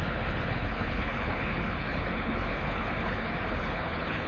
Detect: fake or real fake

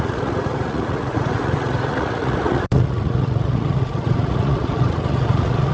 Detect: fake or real fake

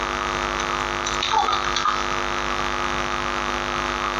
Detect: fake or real real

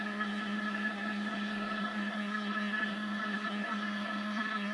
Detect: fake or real fake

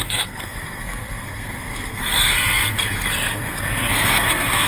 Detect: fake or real fake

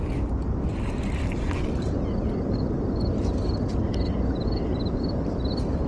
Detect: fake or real real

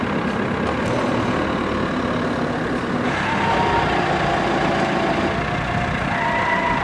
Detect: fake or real real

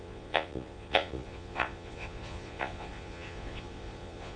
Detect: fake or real fake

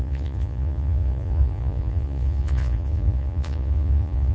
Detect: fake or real fake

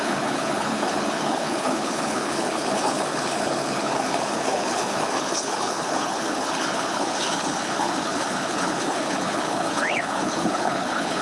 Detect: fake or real fake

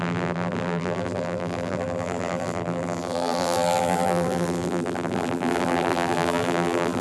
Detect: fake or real fake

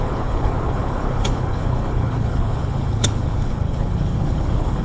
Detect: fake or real fake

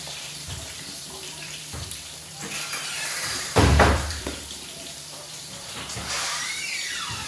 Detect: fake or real fake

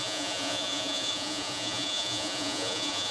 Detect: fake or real fake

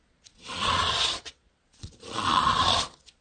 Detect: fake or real fake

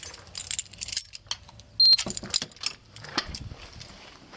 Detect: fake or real real